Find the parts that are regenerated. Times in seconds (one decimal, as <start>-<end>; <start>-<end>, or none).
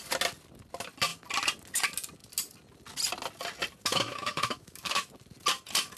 3.9-5.1